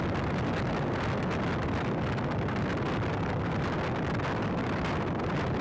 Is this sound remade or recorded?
recorded